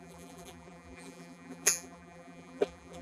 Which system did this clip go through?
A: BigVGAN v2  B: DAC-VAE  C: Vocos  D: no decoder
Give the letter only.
A